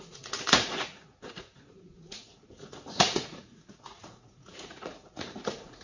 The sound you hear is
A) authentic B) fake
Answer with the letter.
B